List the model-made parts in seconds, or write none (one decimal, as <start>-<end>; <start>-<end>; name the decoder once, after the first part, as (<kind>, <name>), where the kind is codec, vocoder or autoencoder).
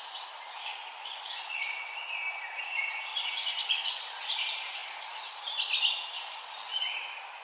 0.0-0.7 (vocoder, BigVGAN v2); 2.3-3.1; 3.7-4.8; 6.1-7.4